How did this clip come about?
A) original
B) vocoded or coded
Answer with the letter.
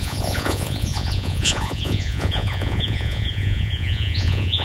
B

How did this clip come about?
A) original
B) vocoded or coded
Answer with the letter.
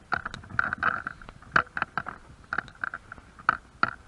A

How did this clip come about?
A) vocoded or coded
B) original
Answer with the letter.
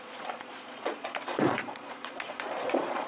A